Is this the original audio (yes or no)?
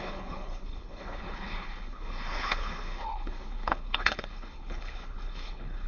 no